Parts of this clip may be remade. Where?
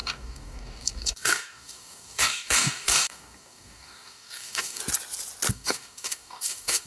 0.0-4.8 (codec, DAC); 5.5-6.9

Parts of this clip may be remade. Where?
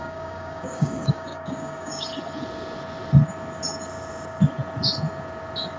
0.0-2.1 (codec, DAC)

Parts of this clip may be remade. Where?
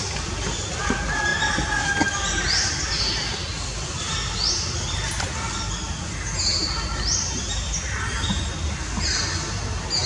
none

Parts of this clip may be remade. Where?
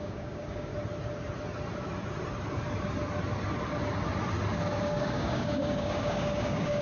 0.0-0.7 (codec, DAC); 4.8-6.8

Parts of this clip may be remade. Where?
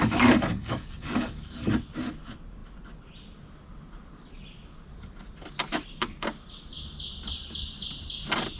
0.0-1.7 (codec, DAC)